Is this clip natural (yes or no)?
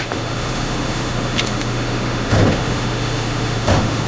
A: no